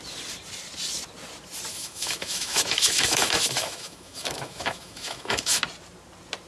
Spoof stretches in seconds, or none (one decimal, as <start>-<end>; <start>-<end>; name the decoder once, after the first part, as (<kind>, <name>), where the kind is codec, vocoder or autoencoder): 1.7-5.6 (autoencoder, DAC-VAE)